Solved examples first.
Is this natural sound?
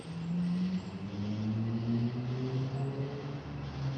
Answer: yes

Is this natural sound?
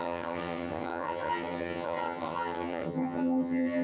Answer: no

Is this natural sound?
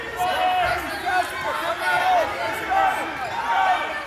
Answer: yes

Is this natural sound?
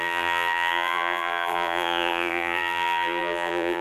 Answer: no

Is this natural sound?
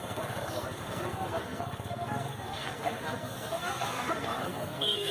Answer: no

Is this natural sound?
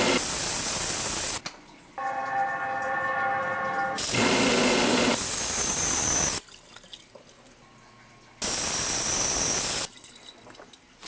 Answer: yes